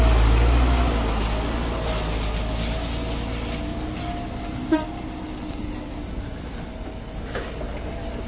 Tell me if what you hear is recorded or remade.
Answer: recorded